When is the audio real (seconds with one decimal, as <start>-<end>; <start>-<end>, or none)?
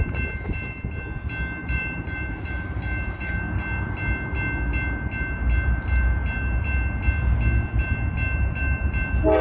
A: 0.0-1.6; 2.8-9.4